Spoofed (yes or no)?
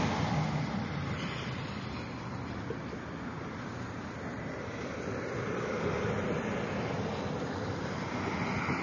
no